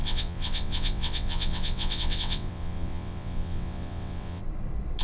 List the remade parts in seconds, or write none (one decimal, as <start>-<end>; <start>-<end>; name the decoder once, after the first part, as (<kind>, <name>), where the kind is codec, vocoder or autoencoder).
0.0-4.4 (vocoder, WaveNeXt)